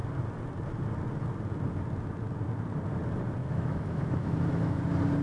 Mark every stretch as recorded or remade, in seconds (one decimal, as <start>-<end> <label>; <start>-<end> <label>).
0.0-3.4 recorded; 3.4-4.8 remade; 4.8-5.2 recorded